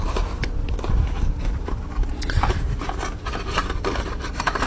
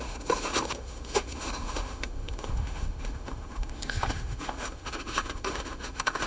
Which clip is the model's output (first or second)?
second